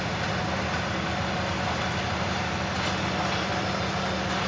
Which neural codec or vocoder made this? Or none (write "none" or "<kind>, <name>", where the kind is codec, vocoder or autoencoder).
none